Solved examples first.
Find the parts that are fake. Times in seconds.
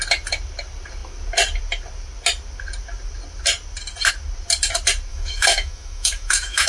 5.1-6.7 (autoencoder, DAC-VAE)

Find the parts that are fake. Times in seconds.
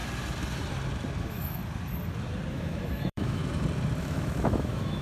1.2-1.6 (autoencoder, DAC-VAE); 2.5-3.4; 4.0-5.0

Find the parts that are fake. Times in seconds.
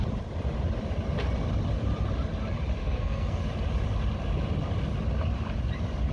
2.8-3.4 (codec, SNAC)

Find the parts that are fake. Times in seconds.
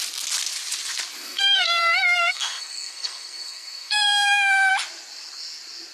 1.2-4.7 (codec, SNAC)